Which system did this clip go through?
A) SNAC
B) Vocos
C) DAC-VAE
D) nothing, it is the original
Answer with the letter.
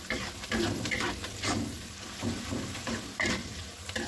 D